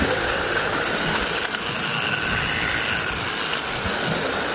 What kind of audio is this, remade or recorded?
recorded